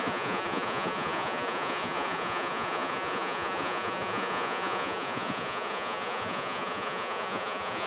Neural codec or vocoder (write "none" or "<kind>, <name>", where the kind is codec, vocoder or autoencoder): vocoder, Vocos